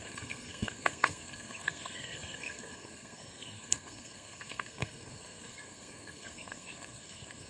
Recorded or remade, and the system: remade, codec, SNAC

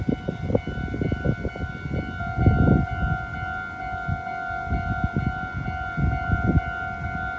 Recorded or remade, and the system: recorded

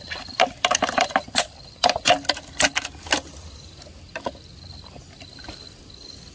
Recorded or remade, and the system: recorded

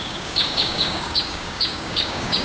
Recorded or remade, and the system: remade, codec, DAC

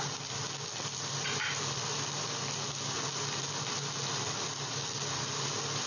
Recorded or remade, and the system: recorded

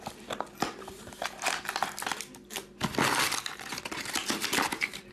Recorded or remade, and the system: recorded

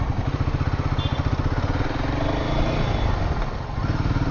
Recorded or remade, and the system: recorded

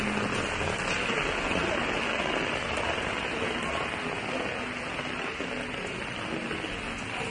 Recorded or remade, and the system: recorded